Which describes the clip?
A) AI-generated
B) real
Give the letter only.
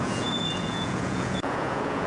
A